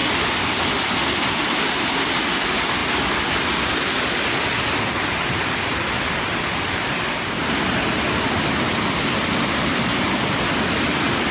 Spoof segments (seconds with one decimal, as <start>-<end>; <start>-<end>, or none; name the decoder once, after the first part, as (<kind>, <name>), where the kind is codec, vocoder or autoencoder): none

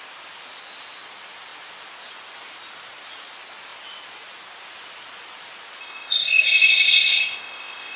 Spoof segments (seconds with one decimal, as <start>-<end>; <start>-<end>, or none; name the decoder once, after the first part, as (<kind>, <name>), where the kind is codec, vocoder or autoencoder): 5.8-8.0 (codec, ZipCodec)

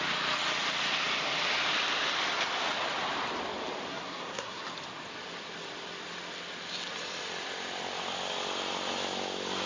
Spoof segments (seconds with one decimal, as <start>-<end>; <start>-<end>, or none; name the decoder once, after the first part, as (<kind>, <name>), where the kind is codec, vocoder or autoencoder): 3.9-4.6 (codec, SNAC)

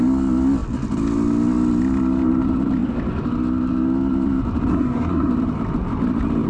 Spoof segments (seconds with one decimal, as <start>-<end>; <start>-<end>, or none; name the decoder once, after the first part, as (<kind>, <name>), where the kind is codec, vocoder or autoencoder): 4.7-5.3 (codec, SNAC)

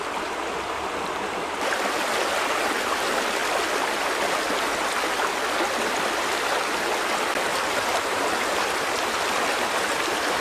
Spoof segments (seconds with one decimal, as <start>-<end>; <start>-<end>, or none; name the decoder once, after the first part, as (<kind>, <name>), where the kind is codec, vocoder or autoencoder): 7.5-8.4 (vocoder, BigVGAN v2)

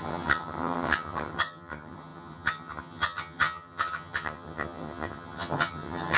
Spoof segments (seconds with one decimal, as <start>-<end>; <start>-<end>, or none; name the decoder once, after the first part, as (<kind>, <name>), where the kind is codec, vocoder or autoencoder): 0.0-6.2 (vocoder, HiFi-GAN)

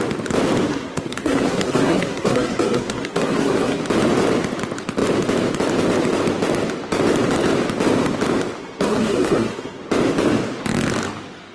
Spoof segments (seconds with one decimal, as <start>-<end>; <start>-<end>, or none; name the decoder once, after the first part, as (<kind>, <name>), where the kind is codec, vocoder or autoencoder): 0.7-3.8 (codec, SNAC); 8.6-9.8

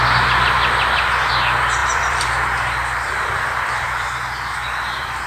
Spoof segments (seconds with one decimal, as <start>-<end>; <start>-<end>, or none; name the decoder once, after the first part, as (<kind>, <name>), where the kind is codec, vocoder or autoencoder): 1.8-5.3 (vocoder, BigVGAN v2)